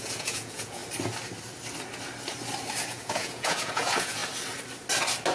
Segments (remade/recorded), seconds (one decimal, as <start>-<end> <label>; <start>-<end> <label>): 0.0-0.8 remade; 0.8-2.9 recorded; 2.9-4.2 remade; 4.2-5.3 recorded